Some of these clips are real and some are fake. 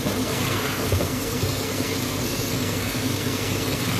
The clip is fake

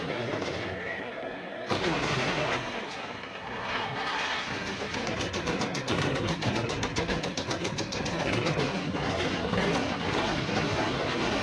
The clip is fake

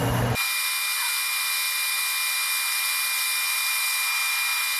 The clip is real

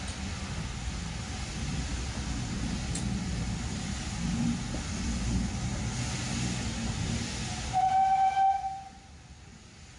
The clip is real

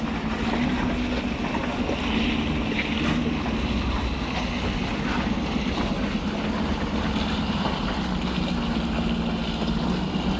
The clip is real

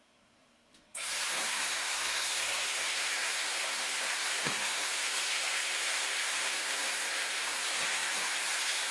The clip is fake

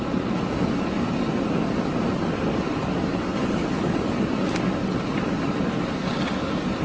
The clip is real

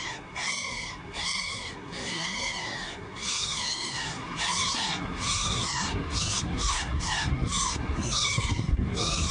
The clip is fake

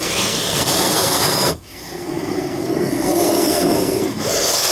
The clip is fake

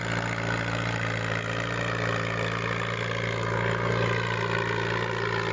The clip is real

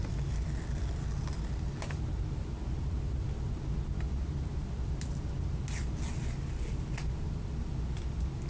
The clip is real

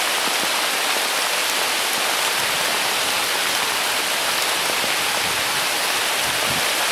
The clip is real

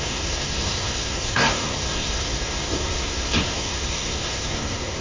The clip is fake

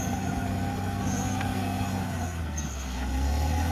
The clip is fake